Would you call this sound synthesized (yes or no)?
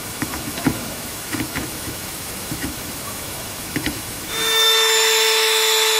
yes